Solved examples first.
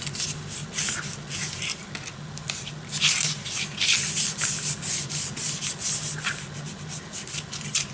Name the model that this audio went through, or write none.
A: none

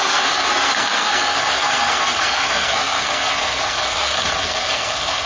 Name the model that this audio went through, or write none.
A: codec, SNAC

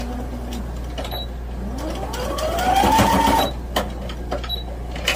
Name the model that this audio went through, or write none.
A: none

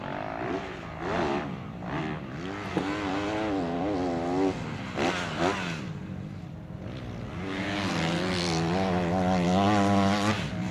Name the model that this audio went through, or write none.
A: none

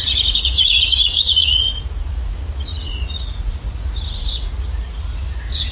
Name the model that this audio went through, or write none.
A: vocoder, Vocos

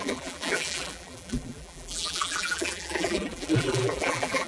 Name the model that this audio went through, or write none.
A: vocoder, BigVGAN v2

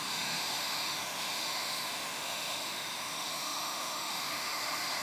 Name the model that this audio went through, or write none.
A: autoencoder, DAC-VAE